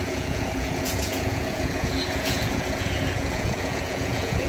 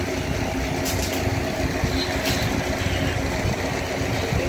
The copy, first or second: first